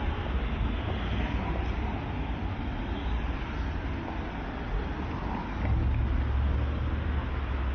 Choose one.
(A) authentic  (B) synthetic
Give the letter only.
A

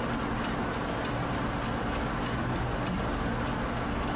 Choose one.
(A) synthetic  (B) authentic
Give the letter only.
B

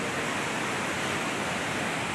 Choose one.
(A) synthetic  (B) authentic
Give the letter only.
B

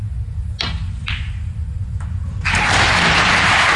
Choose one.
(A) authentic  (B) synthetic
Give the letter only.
A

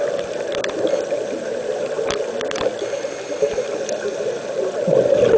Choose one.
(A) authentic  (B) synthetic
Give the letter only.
A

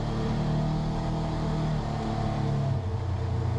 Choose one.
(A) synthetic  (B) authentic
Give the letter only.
B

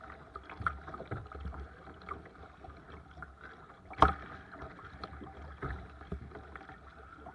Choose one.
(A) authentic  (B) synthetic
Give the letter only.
A